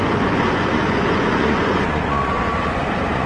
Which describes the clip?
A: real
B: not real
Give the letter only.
B